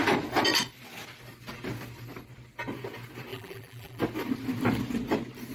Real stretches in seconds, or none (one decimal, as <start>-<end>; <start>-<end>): 0.0-3.3; 4.0-5.5